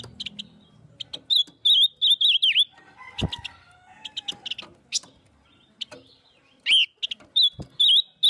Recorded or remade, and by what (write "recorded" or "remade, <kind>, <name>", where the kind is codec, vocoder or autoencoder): recorded